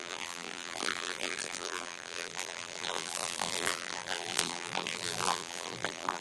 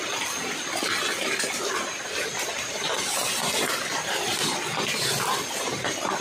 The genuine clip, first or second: second